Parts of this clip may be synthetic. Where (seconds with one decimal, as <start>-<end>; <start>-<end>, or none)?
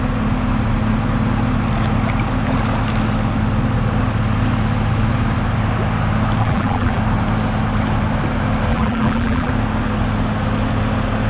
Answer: 6.4-7.0; 8.7-9.5